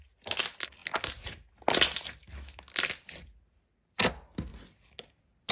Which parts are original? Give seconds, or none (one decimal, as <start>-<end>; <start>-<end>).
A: 0.0-5.5